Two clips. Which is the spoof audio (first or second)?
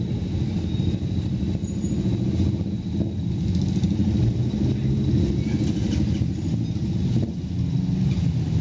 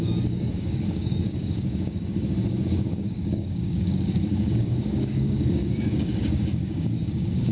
second